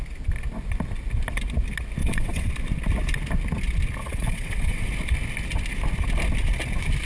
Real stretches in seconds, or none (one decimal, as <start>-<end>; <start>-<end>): 0.0-2.0; 2.5-4.0; 4.9-7.0